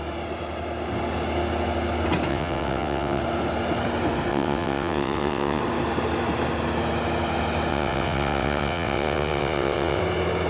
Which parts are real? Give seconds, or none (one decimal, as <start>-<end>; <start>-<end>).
0.0-2.3; 3.2-4.3; 5.6-7.7; 10.0-10.5